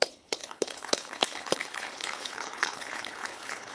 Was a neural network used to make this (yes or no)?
yes